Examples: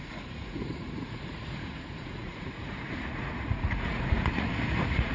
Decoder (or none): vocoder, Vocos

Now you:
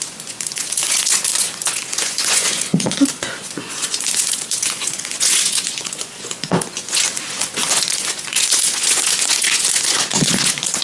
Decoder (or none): vocoder, Vocos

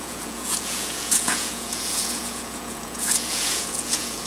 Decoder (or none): vocoder, Vocos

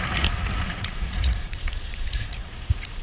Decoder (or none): vocoder, Vocos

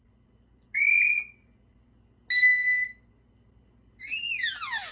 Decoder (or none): none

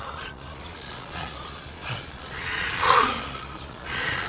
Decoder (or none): vocoder, Vocos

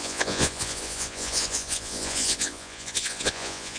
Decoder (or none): vocoder, Vocos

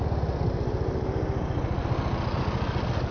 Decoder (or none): none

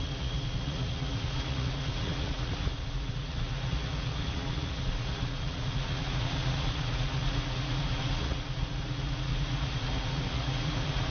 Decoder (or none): vocoder, Vocos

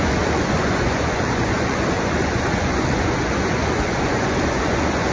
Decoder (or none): vocoder, Vocos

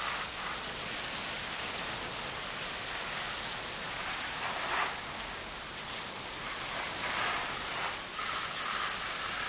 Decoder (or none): none